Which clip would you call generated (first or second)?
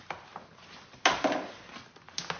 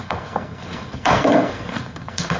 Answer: second